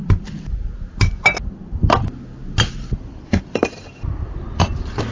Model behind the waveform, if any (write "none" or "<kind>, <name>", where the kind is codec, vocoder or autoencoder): none